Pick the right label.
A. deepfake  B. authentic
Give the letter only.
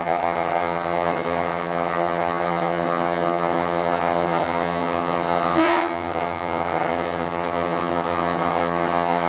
A